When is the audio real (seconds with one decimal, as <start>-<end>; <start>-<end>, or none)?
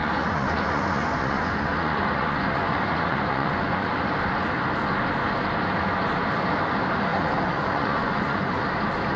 3.9-7.1; 8.5-9.2